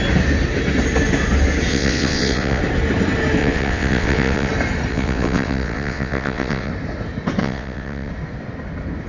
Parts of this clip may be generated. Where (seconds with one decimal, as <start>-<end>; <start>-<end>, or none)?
1.7-2.6; 3.4-4.5; 4.9-6.7; 7.4-8.1